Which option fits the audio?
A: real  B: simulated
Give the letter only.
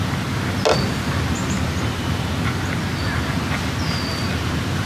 A